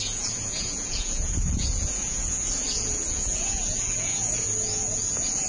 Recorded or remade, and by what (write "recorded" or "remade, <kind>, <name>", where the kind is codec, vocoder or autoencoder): remade, vocoder, Vocos